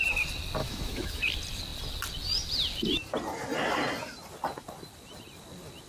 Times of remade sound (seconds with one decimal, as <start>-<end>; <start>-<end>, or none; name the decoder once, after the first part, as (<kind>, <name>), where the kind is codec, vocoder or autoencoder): 0.6-1.2 (autoencoder, DAC-VAE)